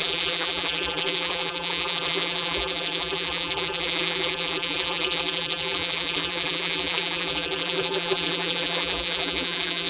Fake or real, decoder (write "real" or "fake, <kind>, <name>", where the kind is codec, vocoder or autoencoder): fake, vocoder, BigVGAN v2